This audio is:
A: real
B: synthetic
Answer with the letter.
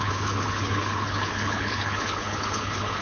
B